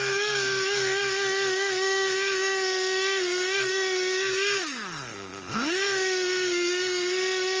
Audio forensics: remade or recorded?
remade